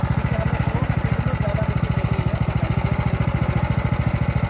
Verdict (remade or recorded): recorded